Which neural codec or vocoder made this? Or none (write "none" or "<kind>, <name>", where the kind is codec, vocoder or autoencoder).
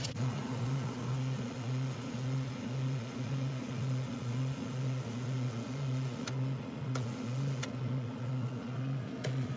vocoder, Vocos